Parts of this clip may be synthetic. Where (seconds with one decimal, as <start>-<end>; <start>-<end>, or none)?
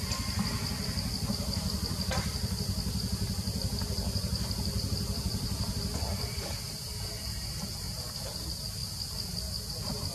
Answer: 0.0-8.8; 9.7-10.1